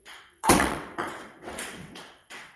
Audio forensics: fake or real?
fake